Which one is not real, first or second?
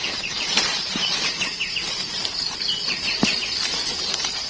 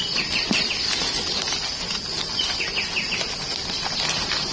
first